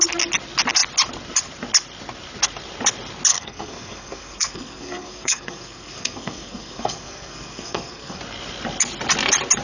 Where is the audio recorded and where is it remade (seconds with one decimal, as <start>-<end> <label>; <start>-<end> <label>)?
0.0-3.3 recorded; 3.3-8.2 remade; 8.2-9.6 recorded